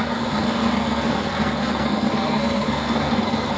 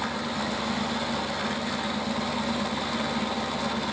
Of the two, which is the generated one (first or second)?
first